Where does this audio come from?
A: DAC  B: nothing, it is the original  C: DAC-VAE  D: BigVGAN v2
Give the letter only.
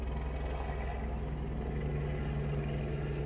B